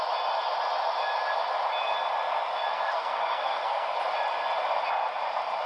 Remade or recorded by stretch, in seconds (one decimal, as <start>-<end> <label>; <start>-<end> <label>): 0.0-2.7 recorded; 2.7-4.0 remade; 4.0-5.7 recorded